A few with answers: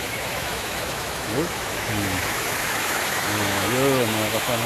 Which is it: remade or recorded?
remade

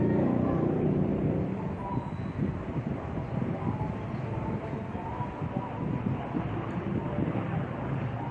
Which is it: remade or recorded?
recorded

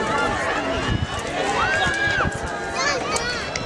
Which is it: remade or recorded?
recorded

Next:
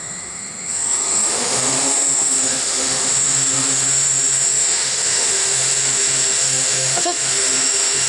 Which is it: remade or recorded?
remade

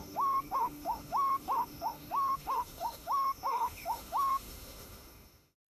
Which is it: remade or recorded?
remade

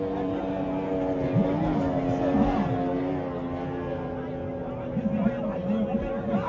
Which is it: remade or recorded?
recorded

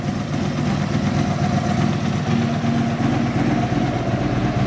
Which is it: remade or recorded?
recorded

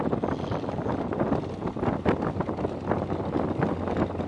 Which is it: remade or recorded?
recorded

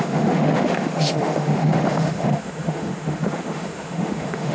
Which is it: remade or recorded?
remade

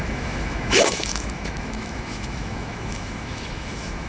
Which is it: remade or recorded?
remade